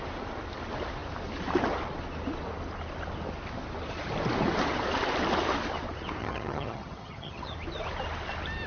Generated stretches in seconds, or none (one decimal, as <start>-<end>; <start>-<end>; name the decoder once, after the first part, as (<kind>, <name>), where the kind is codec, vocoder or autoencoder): 6.2-7.5 (vocoder, HiFi-GAN)

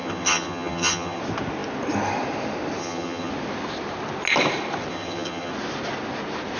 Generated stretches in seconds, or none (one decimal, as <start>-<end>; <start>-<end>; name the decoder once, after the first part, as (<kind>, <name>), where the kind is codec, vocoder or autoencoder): 0.0-1.2 (vocoder, HiFi-GAN); 2.8-3.3; 4.9-5.5

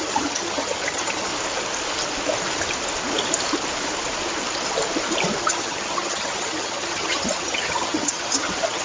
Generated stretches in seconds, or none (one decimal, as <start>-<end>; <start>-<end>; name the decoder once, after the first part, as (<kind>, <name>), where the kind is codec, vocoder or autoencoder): 0.0-1.3 (vocoder, HiFi-GAN); 5.4-8.8

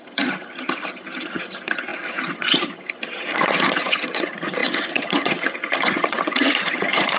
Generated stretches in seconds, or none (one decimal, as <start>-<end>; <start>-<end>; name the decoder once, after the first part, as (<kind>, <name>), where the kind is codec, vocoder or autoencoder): 0.0-7.2 (vocoder, HiFi-GAN)

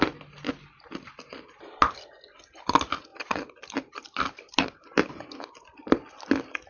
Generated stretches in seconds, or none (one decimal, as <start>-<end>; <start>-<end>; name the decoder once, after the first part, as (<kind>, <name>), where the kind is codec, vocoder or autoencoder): none

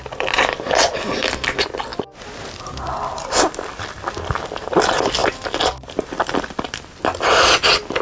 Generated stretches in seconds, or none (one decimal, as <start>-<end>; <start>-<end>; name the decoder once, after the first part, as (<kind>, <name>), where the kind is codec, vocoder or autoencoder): none